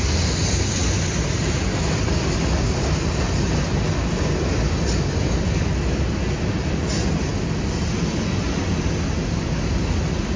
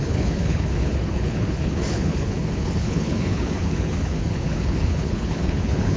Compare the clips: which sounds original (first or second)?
first